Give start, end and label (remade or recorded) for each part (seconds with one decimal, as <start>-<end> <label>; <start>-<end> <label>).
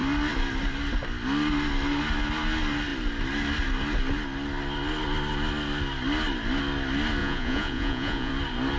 0.0-7.2 recorded; 7.2-8.3 remade; 8.3-8.8 recorded